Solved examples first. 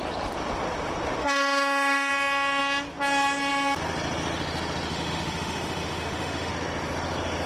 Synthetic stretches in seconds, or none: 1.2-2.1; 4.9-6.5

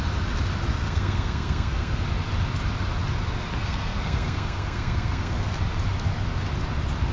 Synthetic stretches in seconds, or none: 0.7-2.0; 3.6-5.5

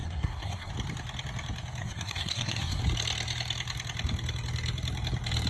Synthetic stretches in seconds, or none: 0.0-0.7; 1.8-2.8

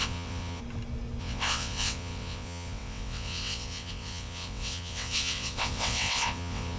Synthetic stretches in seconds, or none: 0.0-0.6; 1.2-6.8

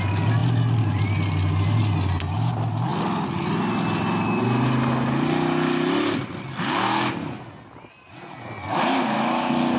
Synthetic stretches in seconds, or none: none